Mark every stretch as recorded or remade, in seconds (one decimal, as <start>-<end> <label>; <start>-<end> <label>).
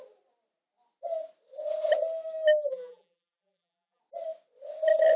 0.0-2.7 recorded; 2.7-4.0 remade; 4.0-5.2 recorded